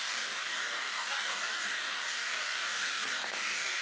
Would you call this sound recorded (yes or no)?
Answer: no